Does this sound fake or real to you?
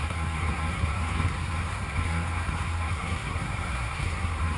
fake